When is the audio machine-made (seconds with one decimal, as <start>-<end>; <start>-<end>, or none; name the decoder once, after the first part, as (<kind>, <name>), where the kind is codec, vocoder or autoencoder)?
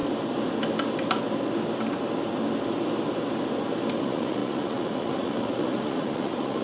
4.0-6.6 (vocoder, Vocos)